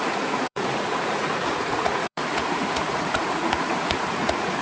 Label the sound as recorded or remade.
remade